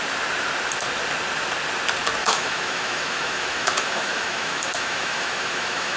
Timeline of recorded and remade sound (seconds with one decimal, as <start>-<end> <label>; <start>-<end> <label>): 0.0-2.2 recorded; 2.2-6.0 remade